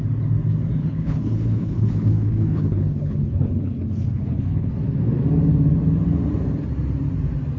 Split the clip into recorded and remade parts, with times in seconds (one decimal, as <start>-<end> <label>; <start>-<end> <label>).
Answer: 0.0-0.8 recorded; 0.8-4.7 remade; 4.7-7.6 recorded